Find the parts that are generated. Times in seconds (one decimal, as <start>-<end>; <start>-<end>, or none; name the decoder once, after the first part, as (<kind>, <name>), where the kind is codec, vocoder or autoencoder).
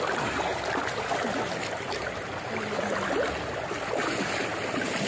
none